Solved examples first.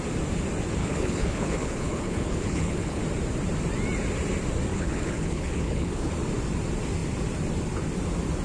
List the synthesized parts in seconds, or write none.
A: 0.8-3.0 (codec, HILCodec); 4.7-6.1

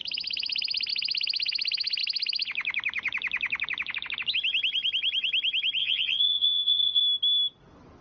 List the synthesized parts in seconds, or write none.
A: 5.8-7.0 (vocoder, Vocos)

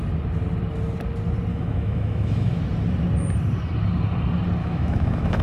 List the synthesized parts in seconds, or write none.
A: 1.5-2.6 (autoencoder, DAC-VAE); 4.6-5.4

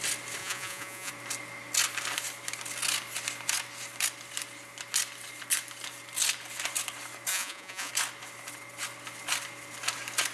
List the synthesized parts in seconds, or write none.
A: 0.4-1.1 (vocoder, Vocos); 7.3-7.9